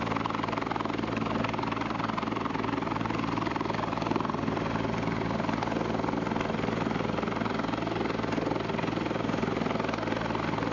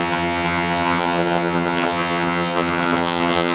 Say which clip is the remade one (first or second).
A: second